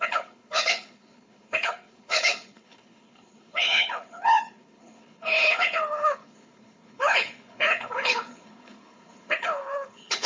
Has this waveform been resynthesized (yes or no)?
yes